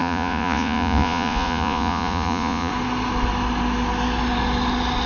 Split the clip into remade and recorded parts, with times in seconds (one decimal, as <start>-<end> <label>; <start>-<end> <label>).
0.0-2.7 remade; 2.7-5.1 recorded